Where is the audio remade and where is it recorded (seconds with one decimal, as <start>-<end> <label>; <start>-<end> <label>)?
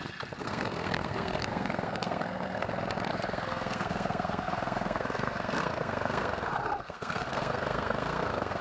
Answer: 0.0-0.4 recorded; 0.4-2.7 remade; 2.7-3.1 recorded; 3.1-8.6 remade